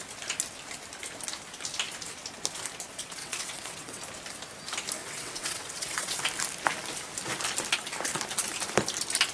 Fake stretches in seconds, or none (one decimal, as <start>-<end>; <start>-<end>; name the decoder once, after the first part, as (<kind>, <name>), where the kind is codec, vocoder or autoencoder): 3.2-4.0 (vocoder, WaveNeXt); 5.0-6.2